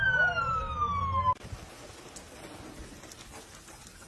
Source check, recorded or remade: recorded